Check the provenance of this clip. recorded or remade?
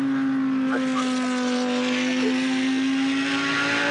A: recorded